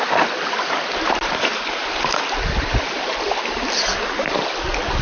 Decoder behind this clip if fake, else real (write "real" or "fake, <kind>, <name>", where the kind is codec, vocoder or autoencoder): real